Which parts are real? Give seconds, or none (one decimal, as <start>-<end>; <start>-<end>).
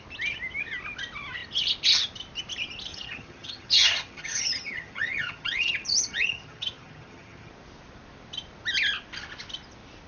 0.0-2.9; 7.5-10.1